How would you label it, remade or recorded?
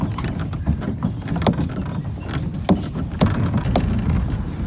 recorded